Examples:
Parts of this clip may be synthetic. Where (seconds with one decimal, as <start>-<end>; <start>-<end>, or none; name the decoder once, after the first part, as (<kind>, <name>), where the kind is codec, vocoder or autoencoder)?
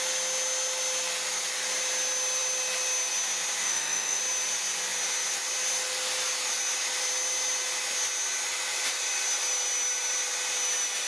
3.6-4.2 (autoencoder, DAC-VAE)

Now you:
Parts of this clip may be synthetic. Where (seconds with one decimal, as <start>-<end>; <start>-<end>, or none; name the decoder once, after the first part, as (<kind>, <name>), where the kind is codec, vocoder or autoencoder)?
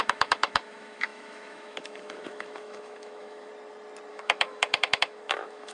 0.0-3.5 (autoencoder, DAC-VAE); 4.1-5.7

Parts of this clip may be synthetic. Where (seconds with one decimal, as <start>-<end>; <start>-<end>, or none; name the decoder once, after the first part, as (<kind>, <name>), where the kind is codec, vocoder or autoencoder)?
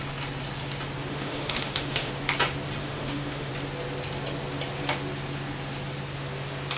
1.1-2.1 (autoencoder, DAC-VAE); 2.8-3.5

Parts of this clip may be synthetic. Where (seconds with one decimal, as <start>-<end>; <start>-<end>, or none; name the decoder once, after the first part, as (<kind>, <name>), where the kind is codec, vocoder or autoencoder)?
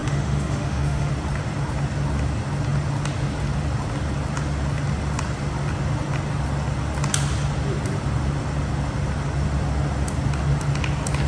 0.0-1.1 (autoencoder, DAC-VAE)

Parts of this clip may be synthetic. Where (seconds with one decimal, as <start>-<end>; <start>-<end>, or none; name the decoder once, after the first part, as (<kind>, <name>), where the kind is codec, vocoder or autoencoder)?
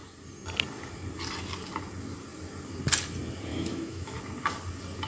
3.5-4.2 (autoencoder, DAC-VAE)